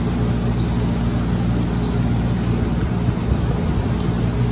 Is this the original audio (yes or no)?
yes